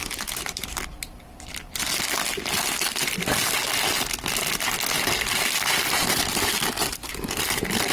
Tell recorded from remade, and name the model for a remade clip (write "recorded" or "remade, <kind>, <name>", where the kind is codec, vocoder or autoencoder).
recorded